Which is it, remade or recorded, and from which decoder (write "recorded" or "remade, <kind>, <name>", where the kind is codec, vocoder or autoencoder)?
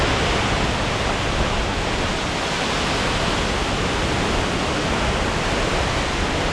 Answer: recorded